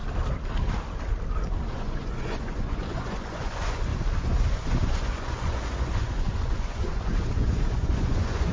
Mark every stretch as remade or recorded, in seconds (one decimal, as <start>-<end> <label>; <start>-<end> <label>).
0.0-1.7 recorded; 1.7-8.5 remade